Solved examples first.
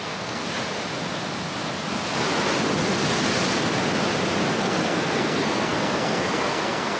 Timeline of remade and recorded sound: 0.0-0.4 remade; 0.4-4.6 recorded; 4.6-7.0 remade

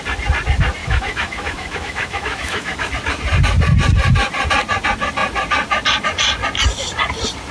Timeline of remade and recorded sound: 0.0-0.8 recorded; 0.8-2.9 remade; 2.9-7.5 recorded

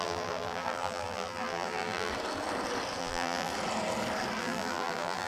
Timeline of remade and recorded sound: 0.0-2.1 remade; 2.1-3.0 recorded; 3.0-3.5 remade; 3.5-4.4 recorded; 4.4-5.3 remade

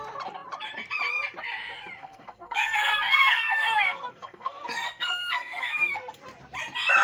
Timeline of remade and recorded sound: 0.0-2.0 recorded; 2.0-6.2 remade; 6.2-7.0 recorded

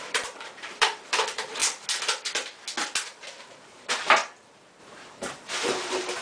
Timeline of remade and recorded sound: 0.0-1.6 remade; 1.6-3.6 recorded; 3.6-4.2 remade; 4.2-4.8 recorded; 4.8-6.2 remade

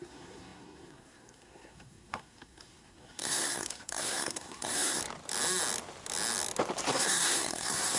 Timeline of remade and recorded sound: 0.0-5.0 remade; 5.0-6.9 recorded; 6.9-8.0 remade

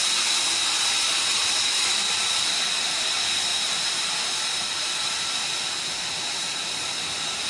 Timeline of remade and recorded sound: 0.0-3.5 recorded; 3.5-5.5 remade; 5.5-7.5 recorded